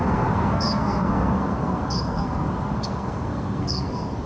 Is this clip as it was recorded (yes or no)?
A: no